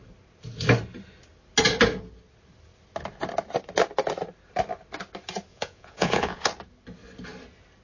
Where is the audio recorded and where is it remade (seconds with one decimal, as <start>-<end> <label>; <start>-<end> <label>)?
0.0-5.5 recorded; 5.5-6.5 remade; 6.5-7.8 recorded